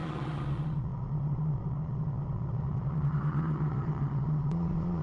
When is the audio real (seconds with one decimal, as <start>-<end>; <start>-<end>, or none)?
none